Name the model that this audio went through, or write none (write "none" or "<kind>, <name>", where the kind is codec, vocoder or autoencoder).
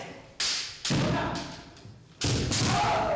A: none